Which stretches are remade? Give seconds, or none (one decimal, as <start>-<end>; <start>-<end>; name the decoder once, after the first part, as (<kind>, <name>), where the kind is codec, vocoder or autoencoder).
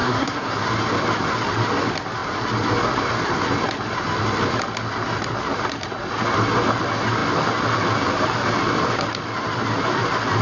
0.0-0.6 (codec, SNAC)